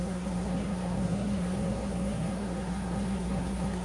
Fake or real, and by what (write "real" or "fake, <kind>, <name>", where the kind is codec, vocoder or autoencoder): fake, codec, SNAC